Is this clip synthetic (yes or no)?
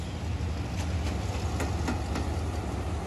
no